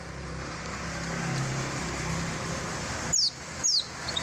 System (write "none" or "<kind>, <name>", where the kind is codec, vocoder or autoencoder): none